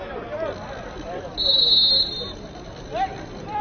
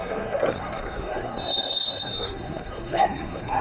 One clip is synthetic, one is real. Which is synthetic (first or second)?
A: second